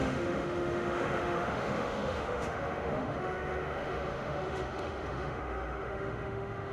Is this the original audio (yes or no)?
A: no